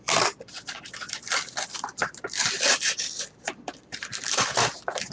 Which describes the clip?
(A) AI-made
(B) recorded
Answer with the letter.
A